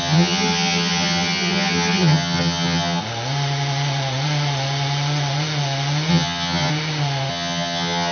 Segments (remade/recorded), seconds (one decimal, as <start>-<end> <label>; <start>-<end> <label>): 0.0-3.0 remade; 3.0-6.1 recorded; 6.1-6.7 remade; 6.7-7.3 recorded; 7.3-8.1 remade